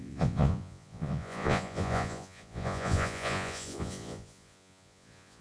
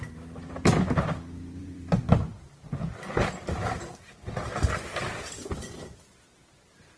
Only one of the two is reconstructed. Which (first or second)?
first